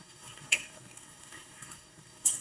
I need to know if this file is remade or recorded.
remade